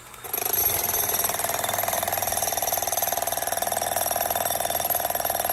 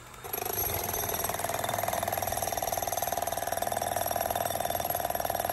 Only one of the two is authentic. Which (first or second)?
first